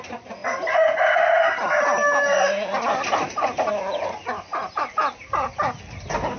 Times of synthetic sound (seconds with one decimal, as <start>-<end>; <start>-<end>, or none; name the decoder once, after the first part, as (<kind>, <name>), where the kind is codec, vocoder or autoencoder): none